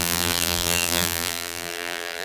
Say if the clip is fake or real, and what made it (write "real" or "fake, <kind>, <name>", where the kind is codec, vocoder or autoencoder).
fake, vocoder, BigVGAN v2